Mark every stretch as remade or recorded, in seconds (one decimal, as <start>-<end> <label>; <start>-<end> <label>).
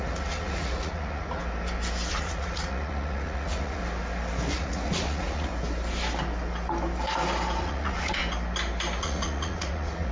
0.0-1.4 remade; 1.4-2.1 recorded; 2.1-3.8 remade; 3.8-4.5 recorded; 4.5-5.5 remade; 5.5-7.6 recorded; 7.6-8.2 remade; 8.2-9.0 recorded; 9.0-10.1 remade